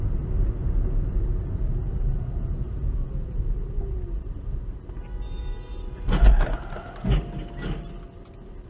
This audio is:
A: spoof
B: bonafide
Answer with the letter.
B